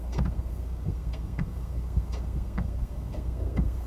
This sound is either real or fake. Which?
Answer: fake